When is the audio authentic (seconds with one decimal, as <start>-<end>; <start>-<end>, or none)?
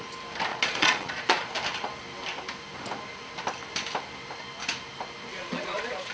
0.0-0.5; 1.5-5.3